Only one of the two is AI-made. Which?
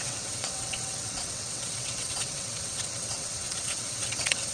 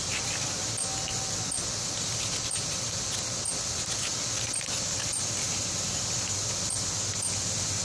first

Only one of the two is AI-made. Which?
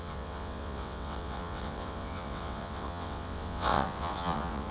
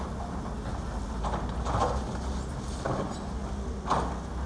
first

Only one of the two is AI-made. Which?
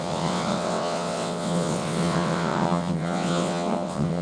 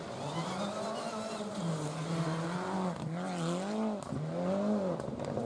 first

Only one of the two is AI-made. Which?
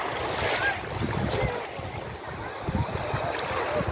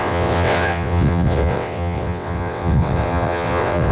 second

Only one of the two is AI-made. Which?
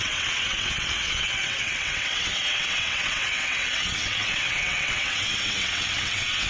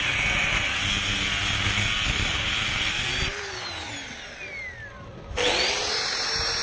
first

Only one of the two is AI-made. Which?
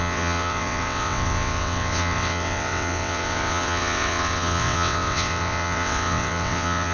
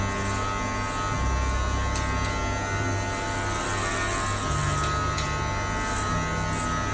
first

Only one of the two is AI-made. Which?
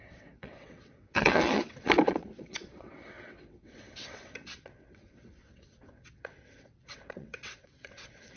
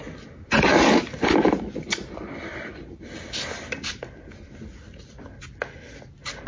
first